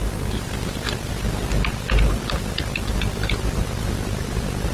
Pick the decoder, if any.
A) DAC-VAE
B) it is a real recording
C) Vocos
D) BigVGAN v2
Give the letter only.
B